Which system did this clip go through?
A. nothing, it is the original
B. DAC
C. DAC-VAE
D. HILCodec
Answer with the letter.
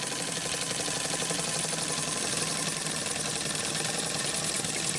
A